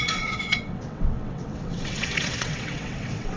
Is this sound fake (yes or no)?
yes